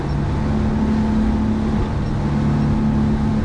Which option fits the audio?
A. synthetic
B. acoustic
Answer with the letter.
B